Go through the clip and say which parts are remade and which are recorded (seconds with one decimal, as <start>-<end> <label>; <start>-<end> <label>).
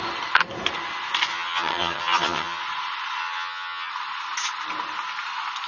0.0-1.3 recorded; 1.3-2.6 remade; 2.6-3.2 recorded; 3.2-3.9 remade; 3.9-5.7 recorded